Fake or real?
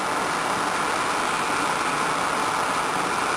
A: real